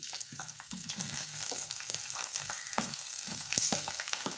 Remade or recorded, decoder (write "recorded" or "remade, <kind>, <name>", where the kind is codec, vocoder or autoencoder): remade, codec, SNAC